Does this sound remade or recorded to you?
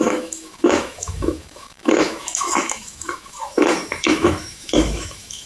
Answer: remade